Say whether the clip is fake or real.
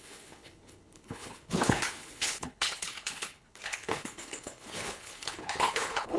fake